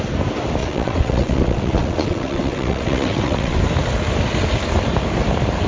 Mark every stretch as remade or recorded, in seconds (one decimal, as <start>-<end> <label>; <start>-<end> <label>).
0.0-0.6 recorded; 0.6-3.6 remade; 3.6-5.7 recorded